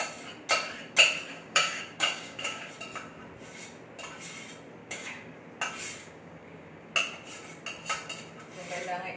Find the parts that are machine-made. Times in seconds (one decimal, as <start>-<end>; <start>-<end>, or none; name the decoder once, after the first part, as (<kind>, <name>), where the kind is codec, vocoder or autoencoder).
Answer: 1.3-2.7 (codec, DAC); 4.8-5.4; 6.0-6.9